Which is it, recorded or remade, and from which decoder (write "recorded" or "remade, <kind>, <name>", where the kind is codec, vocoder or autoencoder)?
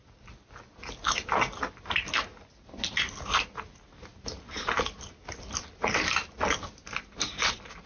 recorded